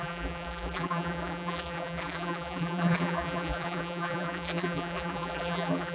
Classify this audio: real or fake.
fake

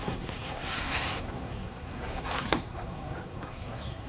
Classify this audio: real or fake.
fake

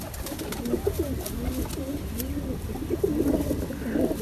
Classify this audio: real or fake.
real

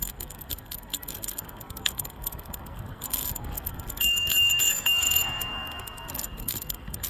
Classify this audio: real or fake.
fake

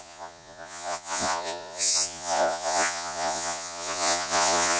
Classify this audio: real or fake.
fake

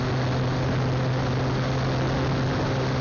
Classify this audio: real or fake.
real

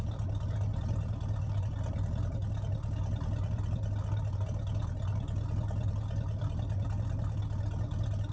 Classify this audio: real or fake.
real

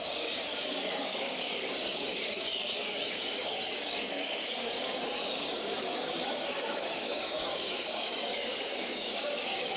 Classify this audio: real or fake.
fake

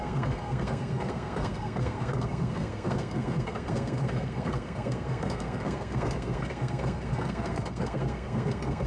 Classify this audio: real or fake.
fake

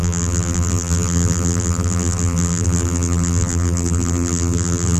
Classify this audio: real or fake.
fake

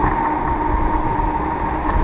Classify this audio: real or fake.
real